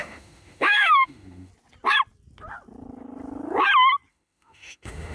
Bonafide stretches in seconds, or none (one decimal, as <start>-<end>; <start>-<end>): 1.5-4.1